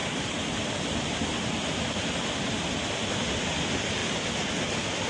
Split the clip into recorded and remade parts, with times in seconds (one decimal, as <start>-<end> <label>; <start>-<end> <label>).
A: 0.0-5.1 recorded